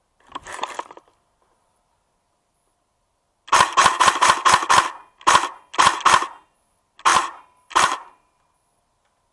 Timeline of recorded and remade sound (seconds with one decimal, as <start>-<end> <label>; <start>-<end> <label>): 0.0-7.1 recorded; 7.1-8.4 remade; 8.4-9.3 recorded